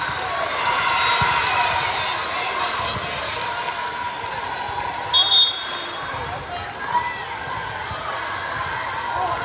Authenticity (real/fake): real